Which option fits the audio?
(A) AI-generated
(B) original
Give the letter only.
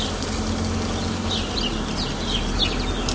B